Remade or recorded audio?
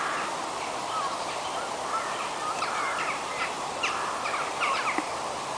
remade